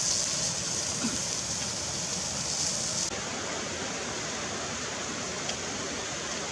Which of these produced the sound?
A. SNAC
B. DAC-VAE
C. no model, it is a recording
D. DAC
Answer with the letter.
C